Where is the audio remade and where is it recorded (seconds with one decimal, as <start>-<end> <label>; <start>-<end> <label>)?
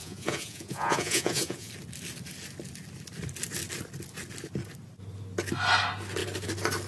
0.0-1.7 remade; 1.7-6.9 recorded